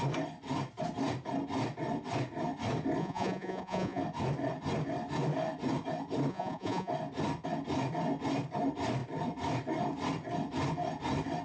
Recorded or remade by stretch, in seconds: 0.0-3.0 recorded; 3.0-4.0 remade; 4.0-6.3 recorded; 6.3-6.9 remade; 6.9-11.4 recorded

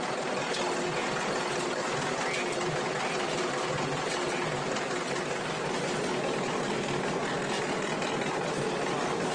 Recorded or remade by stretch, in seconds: 0.0-9.3 recorded

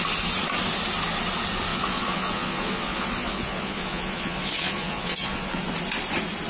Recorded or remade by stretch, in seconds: 0.0-1.7 recorded; 1.7-5.6 remade; 5.6-6.5 recorded

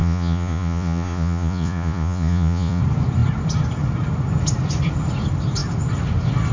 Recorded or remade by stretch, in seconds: 0.0-2.8 remade; 2.8-6.5 recorded